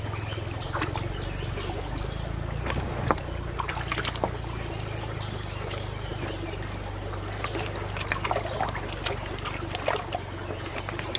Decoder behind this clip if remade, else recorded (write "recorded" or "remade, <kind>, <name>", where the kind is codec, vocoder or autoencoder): recorded